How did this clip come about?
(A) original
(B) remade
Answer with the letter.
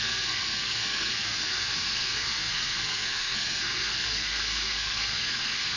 B